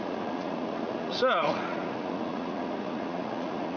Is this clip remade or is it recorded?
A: remade